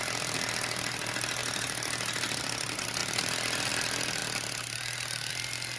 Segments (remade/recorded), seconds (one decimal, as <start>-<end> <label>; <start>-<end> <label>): 0.0-3.0 recorded; 3.0-3.7 remade; 3.7-5.8 recorded